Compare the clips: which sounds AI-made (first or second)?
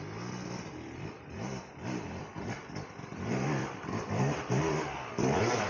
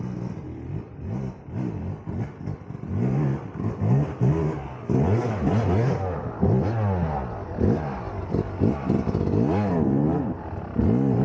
first